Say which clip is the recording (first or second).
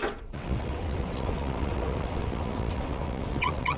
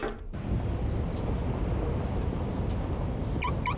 second